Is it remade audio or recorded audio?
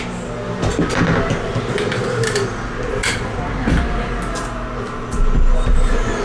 recorded